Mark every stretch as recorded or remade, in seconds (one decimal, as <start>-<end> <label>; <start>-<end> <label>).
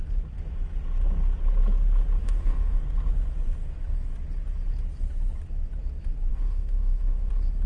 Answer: 0.0-2.2 recorded; 2.2-2.8 remade; 2.8-6.3 recorded; 6.3-7.3 remade; 7.3-7.7 recorded